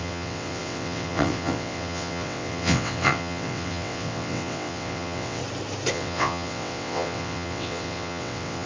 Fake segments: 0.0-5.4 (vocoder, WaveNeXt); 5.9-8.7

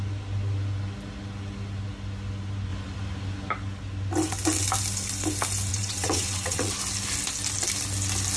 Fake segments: 5.7-6.7 (vocoder, WaveNeXt)